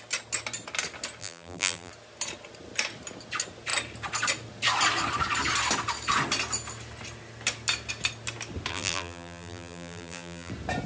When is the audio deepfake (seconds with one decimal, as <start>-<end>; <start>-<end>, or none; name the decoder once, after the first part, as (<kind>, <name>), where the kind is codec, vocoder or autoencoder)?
1.2-1.9 (vocoder, BigVGAN v2); 8.7-10.5